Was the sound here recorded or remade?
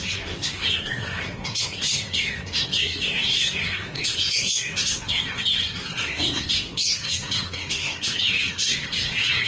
remade